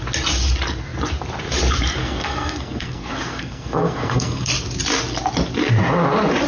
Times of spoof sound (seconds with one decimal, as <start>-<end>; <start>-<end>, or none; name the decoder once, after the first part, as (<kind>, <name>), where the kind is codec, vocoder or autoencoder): 2.0-4.5 (codec, SNAC)